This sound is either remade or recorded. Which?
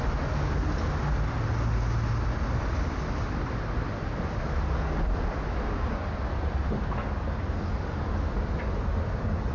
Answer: recorded